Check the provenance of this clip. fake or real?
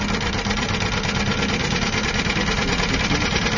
real